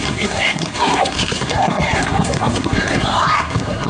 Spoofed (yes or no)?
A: yes